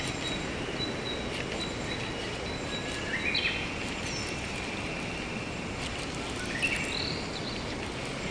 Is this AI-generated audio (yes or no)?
no